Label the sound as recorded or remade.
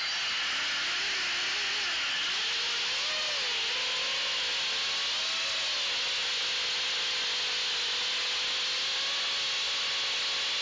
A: recorded